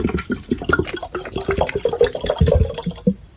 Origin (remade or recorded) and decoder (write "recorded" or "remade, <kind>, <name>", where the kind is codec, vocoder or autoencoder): recorded